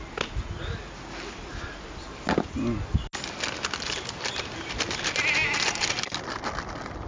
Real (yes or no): yes